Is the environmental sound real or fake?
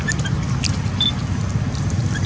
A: real